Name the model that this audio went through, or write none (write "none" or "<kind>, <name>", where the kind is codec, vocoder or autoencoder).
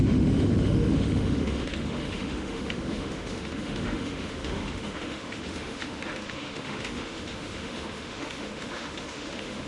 autoencoder, DAC-VAE